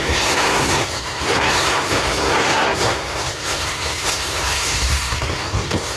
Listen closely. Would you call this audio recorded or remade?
remade